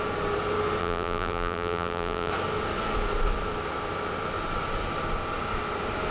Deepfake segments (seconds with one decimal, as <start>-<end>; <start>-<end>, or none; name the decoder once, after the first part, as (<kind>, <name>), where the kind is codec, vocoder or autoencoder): 0.8-2.3 (vocoder, BigVGAN v2)